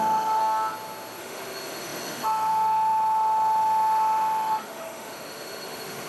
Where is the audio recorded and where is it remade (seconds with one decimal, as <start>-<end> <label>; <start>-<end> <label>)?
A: 0.0-0.4 remade; 0.4-1.2 recorded; 1.2-6.1 remade